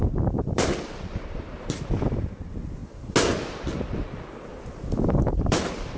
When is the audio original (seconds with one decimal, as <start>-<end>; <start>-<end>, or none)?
2.8-4.6